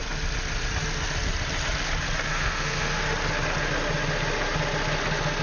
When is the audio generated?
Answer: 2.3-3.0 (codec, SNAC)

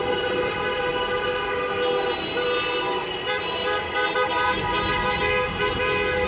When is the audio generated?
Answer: none

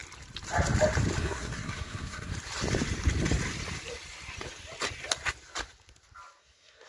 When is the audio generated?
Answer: 1.2-2.3 (codec, SNAC); 6.4-6.9

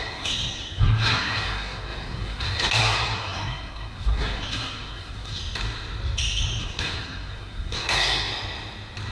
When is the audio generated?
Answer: 0.0-5.4 (codec, SNAC); 6.6-8.3

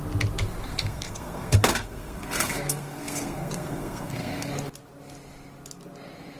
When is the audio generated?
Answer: 0.7-4.5 (codec, SNAC)